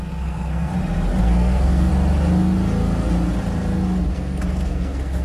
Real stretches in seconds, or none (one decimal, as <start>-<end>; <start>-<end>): 0.7-1.2; 1.9-4.1